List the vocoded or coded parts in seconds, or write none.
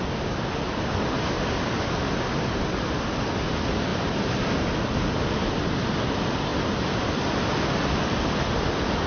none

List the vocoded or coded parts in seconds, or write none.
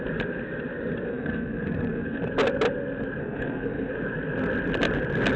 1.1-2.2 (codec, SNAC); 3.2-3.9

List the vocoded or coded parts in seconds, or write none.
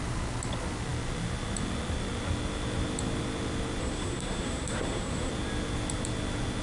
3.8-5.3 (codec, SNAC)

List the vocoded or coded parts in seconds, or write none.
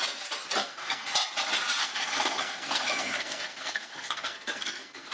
0.6-1.1 (codec, SNAC); 1.8-5.1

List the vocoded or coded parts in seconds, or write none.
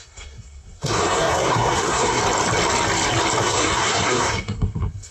0.0-2.2 (codec, SNAC); 3.4-5.1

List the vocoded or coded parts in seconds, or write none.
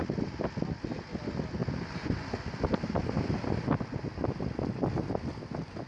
none